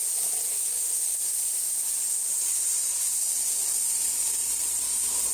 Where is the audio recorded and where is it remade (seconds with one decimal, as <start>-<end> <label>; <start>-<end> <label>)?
0.0-0.5 recorded; 0.5-1.4 remade; 1.4-5.3 recorded